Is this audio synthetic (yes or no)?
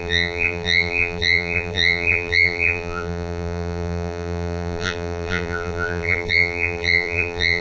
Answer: yes